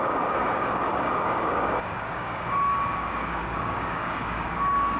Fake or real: fake